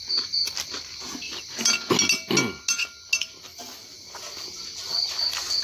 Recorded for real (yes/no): yes